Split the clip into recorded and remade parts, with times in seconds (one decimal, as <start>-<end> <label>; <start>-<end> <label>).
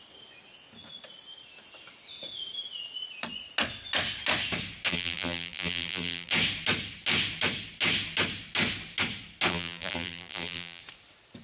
0.0-4.9 recorded; 4.9-6.3 remade; 6.3-9.5 recorded; 9.5-10.8 remade; 10.8-11.4 recorded